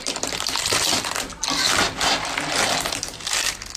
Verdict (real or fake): fake